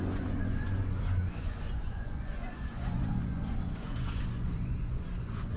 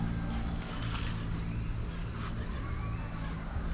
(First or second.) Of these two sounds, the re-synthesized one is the first